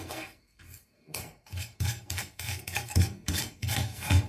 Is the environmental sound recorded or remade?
remade